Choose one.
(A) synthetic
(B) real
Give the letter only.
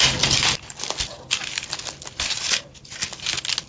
B